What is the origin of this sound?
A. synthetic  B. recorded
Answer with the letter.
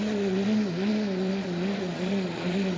A